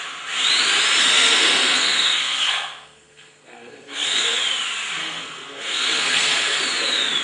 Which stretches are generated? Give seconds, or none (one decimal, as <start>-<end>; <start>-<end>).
1.0-4.4; 5.0-6.6